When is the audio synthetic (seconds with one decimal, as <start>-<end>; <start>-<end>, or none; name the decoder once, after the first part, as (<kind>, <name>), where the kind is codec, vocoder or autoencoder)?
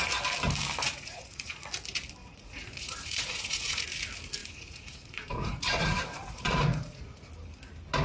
0.9-1.7 (vocoder, Vocos); 2.2-3.8; 4.4-7.3